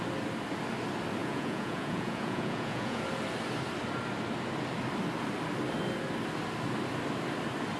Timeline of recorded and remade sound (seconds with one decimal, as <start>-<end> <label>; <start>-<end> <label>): 0.0-1.2 recorded; 1.2-3.0 remade; 3.0-7.8 recorded